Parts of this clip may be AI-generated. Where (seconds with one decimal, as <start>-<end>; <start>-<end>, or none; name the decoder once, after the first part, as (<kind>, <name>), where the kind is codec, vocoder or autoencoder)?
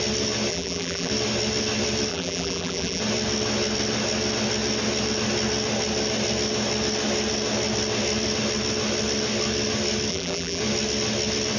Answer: 0.5-1.1 (vocoder, BigVGAN v2); 2.1-3.0; 10.1-10.6